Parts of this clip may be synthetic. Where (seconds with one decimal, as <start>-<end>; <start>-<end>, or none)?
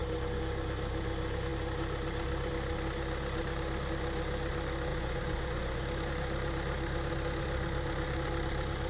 4.9-5.8